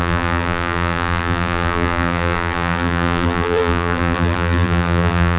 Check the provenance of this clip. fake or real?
fake